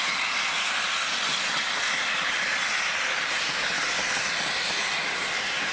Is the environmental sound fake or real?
real